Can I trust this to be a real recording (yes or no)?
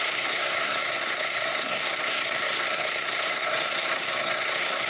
no